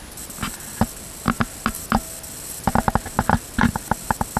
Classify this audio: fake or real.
real